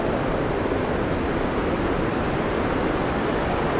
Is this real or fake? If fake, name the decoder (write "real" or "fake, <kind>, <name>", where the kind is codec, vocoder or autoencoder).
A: real